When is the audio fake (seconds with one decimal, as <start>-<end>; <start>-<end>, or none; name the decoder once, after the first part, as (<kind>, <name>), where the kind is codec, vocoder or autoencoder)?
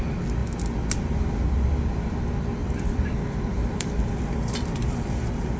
2.6-5.6 (vocoder, BigVGAN v2)